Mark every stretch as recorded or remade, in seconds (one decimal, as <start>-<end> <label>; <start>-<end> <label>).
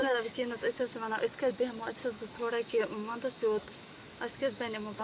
0.0-0.9 remade; 0.9-2.0 recorded; 2.0-5.0 remade